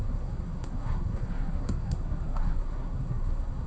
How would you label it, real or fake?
fake